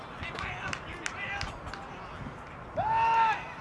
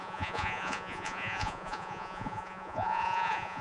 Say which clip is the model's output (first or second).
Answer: second